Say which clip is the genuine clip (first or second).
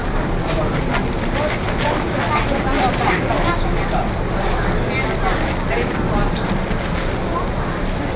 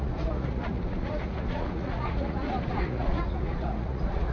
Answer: first